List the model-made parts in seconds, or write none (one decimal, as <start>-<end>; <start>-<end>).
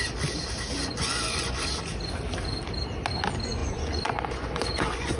0.8-1.6; 3.6-5.2